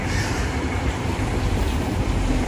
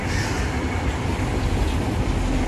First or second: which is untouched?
second